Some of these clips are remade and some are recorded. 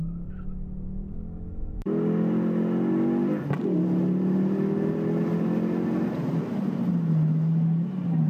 recorded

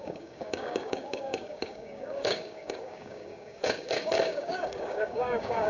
remade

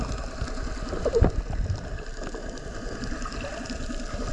recorded